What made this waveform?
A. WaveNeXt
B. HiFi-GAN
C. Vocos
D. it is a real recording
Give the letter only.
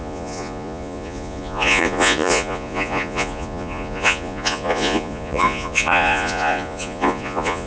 C